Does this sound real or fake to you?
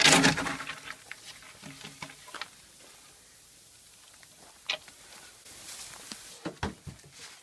real